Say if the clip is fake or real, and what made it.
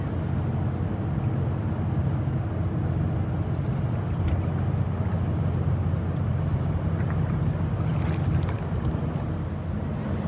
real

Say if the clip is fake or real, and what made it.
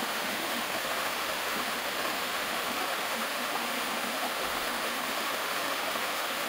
fake, autoencoder, DAC-VAE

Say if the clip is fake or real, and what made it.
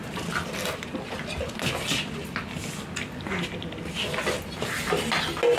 real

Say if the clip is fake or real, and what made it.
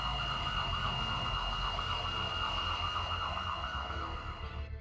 fake, codec, SNAC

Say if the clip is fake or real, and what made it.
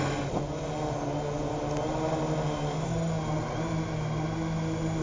real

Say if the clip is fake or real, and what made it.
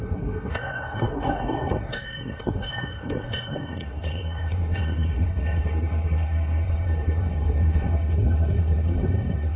fake, codec, SNAC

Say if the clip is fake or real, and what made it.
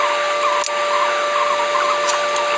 real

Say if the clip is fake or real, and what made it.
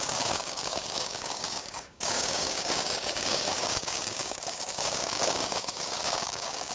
fake, codec, DAC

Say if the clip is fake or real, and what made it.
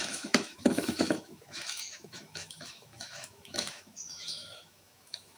fake, autoencoder, DAC-VAE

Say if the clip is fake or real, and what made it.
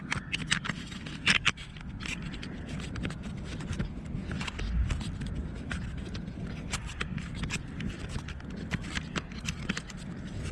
real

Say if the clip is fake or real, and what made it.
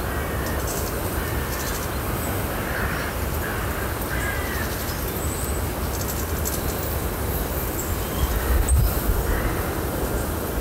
real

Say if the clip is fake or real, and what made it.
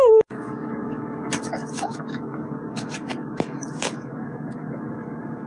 fake, codec, DAC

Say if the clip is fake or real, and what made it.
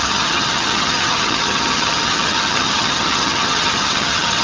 fake, vocoder, HiFi-GAN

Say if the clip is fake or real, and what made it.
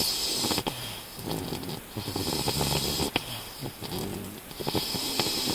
real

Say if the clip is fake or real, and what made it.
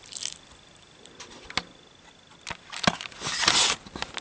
real